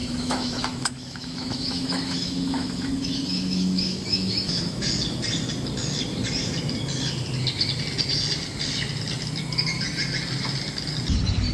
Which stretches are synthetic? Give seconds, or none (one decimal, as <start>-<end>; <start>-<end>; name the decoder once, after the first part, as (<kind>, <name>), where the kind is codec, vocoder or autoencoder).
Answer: 0.0-4.9 (autoencoder, DAC-VAE)